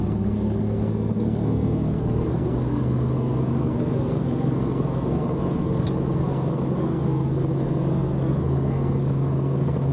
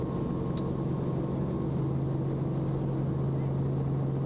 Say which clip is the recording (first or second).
second